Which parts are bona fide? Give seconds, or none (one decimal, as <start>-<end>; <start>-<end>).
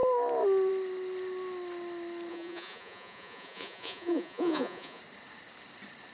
0.0-2.3; 5.0-6.1